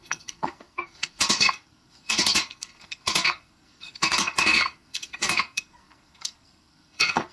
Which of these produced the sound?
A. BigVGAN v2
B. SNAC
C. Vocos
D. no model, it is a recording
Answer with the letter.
B